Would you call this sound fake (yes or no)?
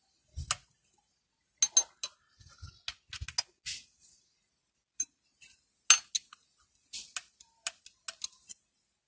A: no